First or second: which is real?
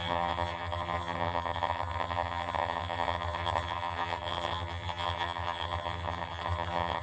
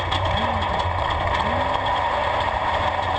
second